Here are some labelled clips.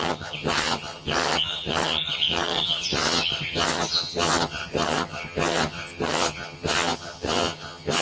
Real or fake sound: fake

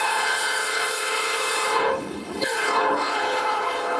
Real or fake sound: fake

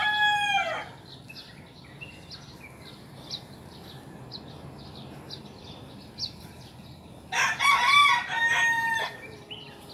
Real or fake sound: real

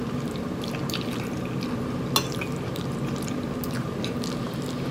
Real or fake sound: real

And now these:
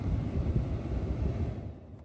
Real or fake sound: real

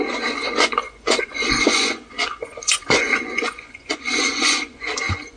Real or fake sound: fake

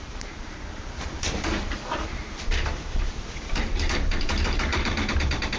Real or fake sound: fake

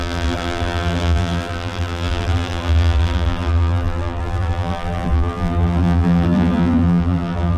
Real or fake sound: fake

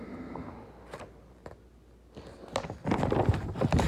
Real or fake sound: real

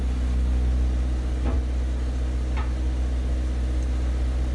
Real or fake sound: real